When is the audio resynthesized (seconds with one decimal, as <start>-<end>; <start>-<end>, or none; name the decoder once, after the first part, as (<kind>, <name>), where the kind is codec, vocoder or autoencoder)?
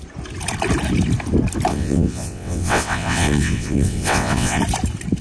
1.7-4.6 (vocoder, WaveNeXt)